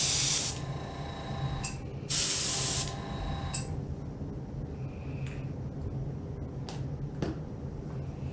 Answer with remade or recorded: recorded